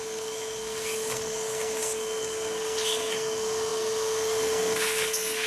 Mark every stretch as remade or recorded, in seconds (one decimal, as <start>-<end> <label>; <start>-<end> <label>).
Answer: 0.0-5.5 remade